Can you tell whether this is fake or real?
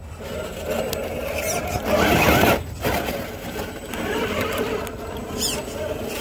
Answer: real